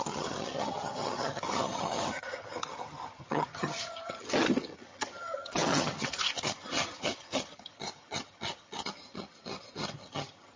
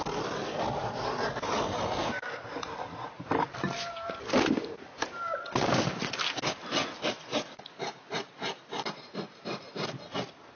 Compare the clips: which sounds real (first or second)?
second